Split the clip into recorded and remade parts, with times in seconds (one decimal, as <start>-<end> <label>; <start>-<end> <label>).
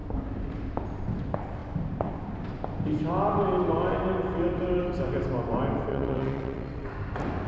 0.0-5.9 recorded; 5.9-6.9 remade; 6.9-7.5 recorded